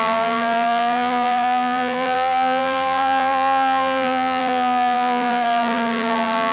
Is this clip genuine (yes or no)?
no